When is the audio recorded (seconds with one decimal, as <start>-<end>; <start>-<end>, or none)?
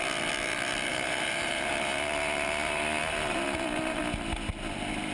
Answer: 0.0-0.9; 4.0-5.1